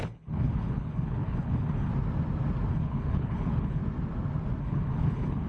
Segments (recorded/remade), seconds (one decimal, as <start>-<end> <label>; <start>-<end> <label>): 0.0-1.9 remade; 1.9-2.7 recorded; 2.7-3.8 remade; 3.8-4.6 recorded; 4.6-5.5 remade

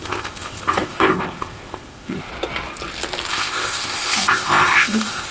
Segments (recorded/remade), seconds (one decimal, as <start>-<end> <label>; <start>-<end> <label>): 0.0-2.3 remade; 2.3-3.3 recorded; 3.3-5.3 remade

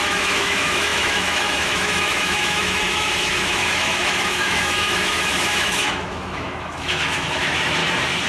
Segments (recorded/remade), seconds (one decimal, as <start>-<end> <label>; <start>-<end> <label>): 0.0-7.8 remade; 7.8-8.3 recorded

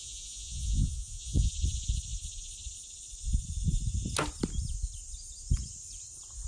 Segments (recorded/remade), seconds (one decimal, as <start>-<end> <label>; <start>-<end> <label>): 0.0-1.5 remade; 1.5-6.5 recorded

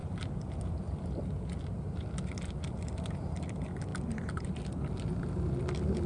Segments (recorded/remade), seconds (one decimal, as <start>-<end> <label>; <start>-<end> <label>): 0.0-3.9 recorded; 3.9-4.8 remade; 4.8-6.1 recorded

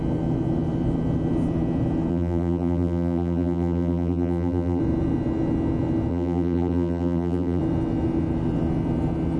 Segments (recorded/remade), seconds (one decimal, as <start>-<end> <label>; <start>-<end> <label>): 0.0-2.1 recorded; 2.1-4.8 remade; 4.8-6.1 recorded; 6.1-7.6 remade; 7.6-9.4 recorded

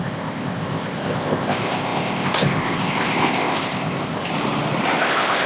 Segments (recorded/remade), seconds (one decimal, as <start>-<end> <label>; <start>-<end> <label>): 0.0-4.3 remade; 4.3-5.0 recorded; 5.0-5.5 remade

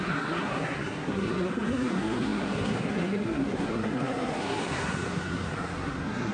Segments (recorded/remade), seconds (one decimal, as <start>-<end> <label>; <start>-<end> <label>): 0.0-6.3 remade